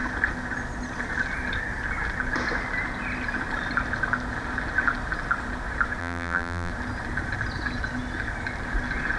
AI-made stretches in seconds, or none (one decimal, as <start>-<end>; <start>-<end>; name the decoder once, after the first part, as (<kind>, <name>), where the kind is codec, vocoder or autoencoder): 6.0-6.7 (vocoder, BigVGAN v2)